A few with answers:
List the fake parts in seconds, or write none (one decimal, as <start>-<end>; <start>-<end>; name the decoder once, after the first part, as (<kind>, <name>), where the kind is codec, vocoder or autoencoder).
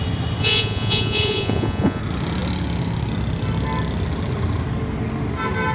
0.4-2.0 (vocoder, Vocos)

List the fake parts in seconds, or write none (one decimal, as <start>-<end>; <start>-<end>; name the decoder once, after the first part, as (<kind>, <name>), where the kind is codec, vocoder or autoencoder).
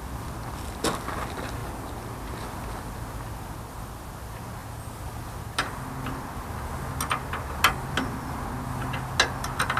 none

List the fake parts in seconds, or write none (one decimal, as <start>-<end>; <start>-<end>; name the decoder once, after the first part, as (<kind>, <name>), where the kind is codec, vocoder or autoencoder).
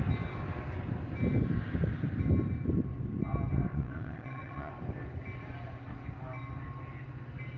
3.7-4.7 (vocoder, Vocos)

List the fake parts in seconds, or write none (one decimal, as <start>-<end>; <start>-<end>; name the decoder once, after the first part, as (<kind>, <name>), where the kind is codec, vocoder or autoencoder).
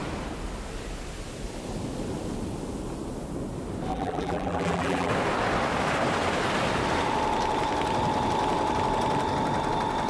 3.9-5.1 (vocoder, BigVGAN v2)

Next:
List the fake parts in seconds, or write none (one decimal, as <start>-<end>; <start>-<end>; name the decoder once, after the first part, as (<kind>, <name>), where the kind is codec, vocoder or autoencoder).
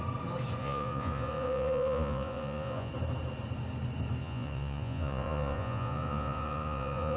0.6-2.9 (vocoder, Vocos); 4.2-7.2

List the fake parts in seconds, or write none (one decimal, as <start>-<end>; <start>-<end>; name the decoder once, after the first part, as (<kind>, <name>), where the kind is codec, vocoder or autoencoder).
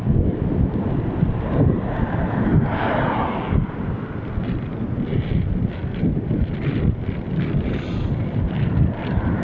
none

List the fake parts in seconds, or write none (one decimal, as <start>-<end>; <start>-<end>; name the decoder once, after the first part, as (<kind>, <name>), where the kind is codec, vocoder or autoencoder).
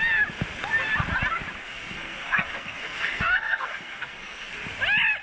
1.6-4.5 (codec, SNAC)